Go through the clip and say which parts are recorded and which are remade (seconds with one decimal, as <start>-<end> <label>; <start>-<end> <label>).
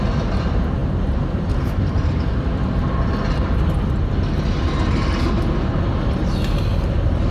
0.0-0.8 recorded; 0.8-2.3 remade; 2.3-7.3 recorded